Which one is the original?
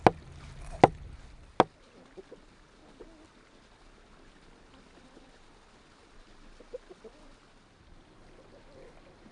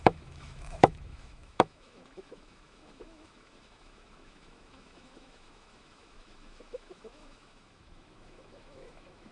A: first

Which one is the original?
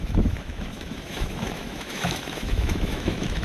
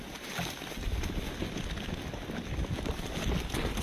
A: second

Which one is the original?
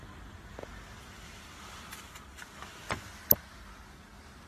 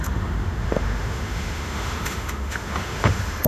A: first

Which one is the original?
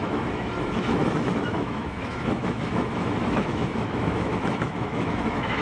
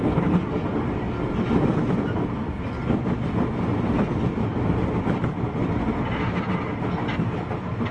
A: second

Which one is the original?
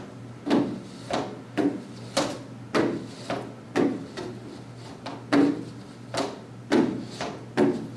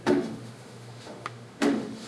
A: first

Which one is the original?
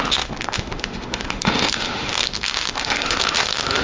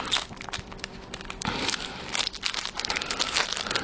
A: second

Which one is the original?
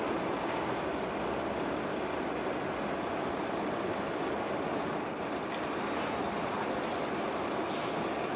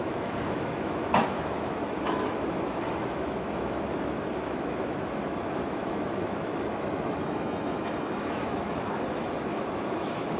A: first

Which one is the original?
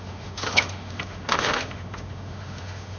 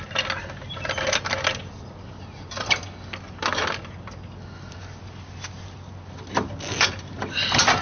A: second